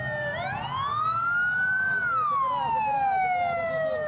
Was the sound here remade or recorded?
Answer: recorded